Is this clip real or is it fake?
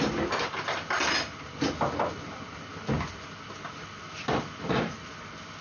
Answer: real